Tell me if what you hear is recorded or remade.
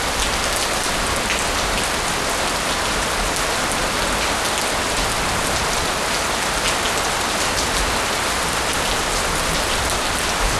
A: recorded